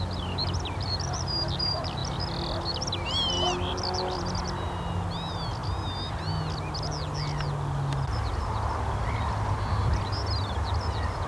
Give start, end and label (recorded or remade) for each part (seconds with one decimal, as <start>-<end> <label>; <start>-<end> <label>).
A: 0.0-11.3 recorded